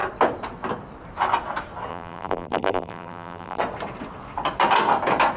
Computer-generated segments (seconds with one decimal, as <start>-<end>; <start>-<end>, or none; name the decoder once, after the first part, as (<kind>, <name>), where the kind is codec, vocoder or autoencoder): 1.9-3.6 (vocoder, BigVGAN v2)